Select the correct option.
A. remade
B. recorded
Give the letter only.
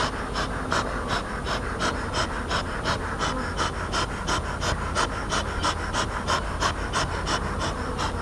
B